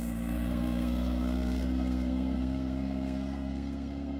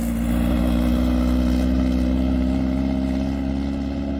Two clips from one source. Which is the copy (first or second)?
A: first